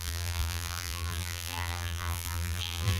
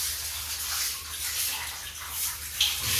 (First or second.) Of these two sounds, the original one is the second